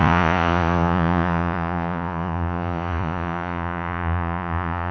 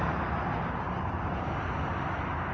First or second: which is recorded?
second